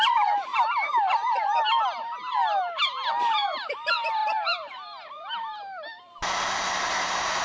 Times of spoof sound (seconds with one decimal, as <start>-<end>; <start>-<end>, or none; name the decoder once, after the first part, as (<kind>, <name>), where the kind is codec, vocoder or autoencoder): 0.0-0.5 (vocoder, BigVGAN v2); 3.1-4.2; 6.7-7.4